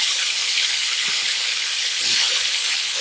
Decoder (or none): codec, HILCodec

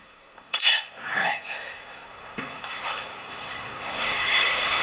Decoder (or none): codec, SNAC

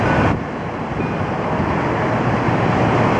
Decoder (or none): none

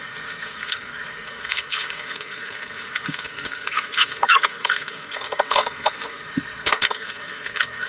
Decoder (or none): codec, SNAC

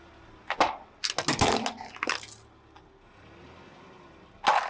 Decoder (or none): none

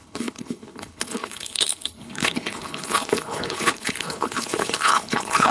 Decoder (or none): codec, HILCodec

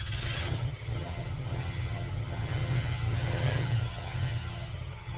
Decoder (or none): vocoder, HiFi-GAN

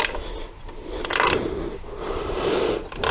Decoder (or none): vocoder, BigVGAN v2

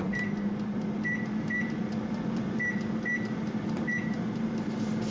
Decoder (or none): vocoder, BigVGAN v2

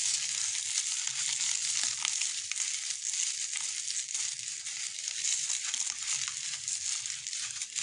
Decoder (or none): none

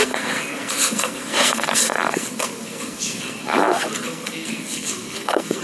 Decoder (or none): codec, SNAC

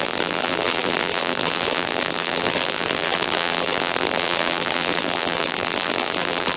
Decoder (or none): vocoder, BigVGAN v2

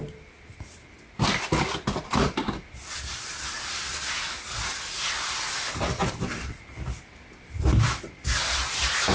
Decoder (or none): none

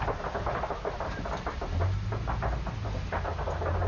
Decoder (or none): none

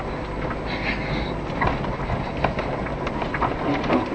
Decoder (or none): none